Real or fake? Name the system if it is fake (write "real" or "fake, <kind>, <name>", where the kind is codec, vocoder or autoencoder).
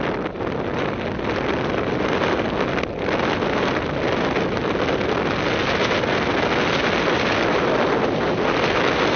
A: real